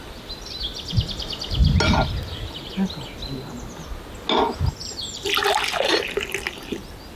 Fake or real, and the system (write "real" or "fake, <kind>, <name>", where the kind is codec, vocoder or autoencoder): real